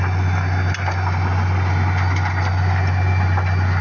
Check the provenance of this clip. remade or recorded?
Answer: recorded